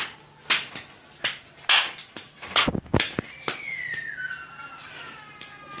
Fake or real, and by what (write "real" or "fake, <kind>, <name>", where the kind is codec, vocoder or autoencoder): real